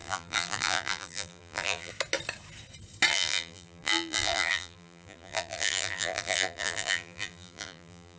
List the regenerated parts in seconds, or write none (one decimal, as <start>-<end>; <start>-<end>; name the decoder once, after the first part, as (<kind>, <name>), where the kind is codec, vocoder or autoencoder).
0.0-1.9 (vocoder, BigVGAN v2); 3.1-8.2